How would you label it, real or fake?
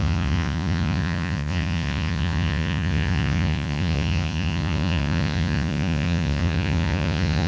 fake